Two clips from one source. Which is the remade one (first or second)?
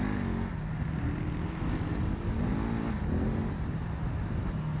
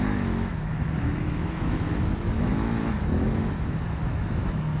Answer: second